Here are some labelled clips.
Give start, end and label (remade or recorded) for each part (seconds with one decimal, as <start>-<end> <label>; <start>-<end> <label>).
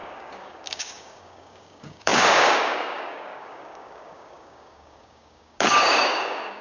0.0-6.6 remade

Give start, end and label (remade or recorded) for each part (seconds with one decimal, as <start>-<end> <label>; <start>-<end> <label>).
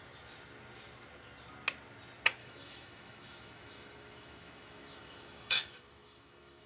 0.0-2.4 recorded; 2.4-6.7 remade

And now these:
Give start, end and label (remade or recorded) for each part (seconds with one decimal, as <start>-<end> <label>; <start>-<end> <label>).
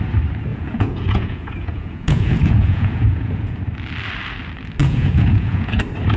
0.0-0.5 recorded; 0.5-3.6 remade; 3.6-4.8 recorded; 4.8-5.8 remade; 5.8-6.2 recorded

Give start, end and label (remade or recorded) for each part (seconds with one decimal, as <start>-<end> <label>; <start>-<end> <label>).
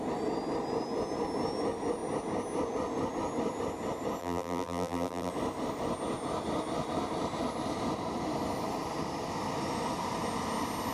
0.0-4.2 recorded; 4.2-5.3 remade; 5.3-10.9 recorded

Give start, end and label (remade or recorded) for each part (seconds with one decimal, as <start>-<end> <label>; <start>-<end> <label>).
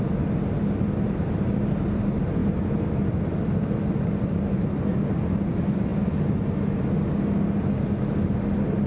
0.0-8.9 recorded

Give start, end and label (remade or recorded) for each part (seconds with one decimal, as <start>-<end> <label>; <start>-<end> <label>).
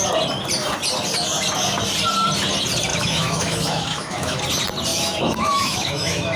0.0-2.9 recorded; 2.9-4.4 remade; 4.4-4.9 recorded; 4.9-6.4 remade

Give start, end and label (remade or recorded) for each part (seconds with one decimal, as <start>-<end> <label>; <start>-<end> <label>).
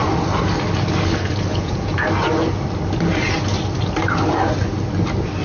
0.0-1.5 recorded; 1.5-2.0 remade; 2.0-5.4 recorded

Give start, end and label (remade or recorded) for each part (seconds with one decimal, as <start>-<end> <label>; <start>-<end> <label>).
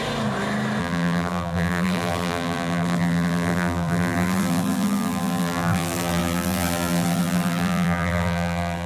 0.0-0.8 recorded; 0.8-8.9 remade